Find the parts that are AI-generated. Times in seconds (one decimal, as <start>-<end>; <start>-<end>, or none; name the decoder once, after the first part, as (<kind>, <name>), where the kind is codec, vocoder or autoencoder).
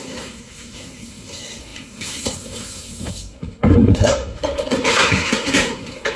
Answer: 0.0-6.2 (codec, SNAC)